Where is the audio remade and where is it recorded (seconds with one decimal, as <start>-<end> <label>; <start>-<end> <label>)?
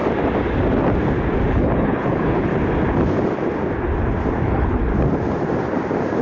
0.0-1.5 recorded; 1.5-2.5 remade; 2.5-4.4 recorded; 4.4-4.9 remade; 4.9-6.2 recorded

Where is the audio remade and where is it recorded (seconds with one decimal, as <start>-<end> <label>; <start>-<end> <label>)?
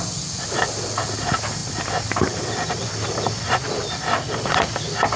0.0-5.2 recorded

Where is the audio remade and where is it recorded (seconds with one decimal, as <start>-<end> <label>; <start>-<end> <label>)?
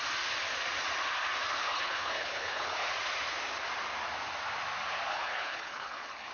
0.0-1.6 recorded; 1.6-2.9 remade; 2.9-5.1 recorded; 5.1-6.3 remade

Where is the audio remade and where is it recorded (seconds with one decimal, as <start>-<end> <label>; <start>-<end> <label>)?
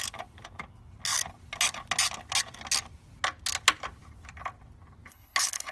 0.0-5.1 recorded; 5.1-5.7 remade